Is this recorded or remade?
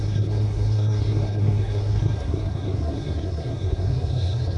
remade